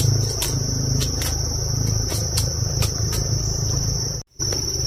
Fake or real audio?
real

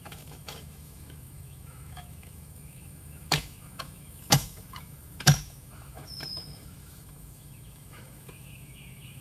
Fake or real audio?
fake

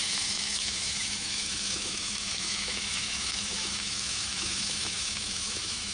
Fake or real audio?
fake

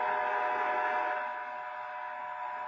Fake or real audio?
real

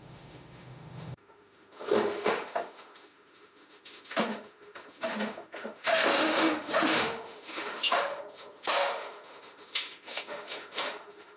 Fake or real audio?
fake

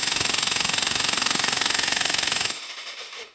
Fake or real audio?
fake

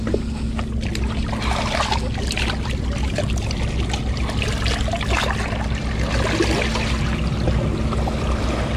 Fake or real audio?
real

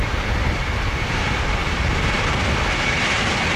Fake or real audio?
real